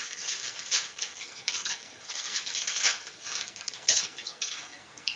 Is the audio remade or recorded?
remade